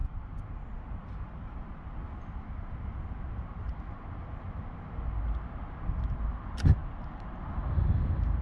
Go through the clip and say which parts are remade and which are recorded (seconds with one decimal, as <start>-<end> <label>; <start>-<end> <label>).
0.0-8.4 recorded